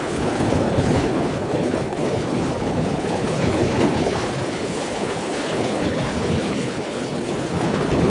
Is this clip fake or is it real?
fake